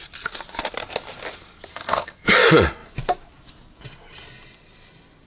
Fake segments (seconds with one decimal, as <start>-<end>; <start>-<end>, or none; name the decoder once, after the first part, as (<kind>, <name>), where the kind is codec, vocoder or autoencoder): 1.7-2.3 (codec, SNAC)